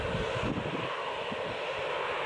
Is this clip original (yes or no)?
yes